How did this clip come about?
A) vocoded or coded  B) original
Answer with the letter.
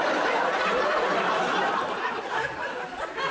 B